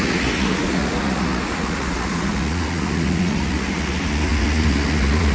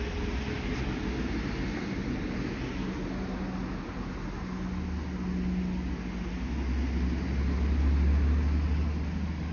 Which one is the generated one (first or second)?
first